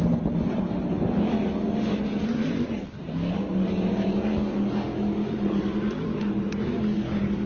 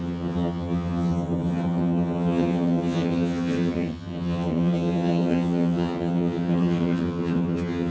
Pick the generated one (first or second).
second